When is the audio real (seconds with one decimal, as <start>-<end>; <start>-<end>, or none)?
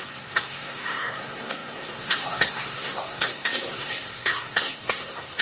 none